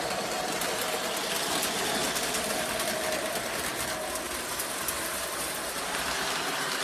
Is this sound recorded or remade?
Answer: recorded